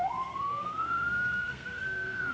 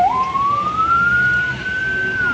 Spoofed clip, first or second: first